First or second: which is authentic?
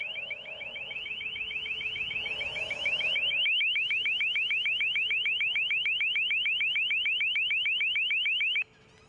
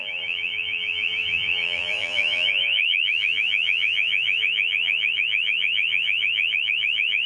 first